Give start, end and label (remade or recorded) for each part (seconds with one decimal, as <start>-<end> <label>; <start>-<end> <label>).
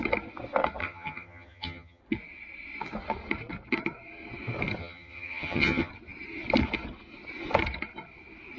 0.0-0.8 recorded; 0.8-2.0 remade; 2.0-4.8 recorded; 4.8-5.9 remade; 5.9-8.6 recorded